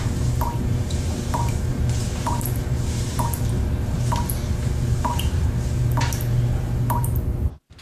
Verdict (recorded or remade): remade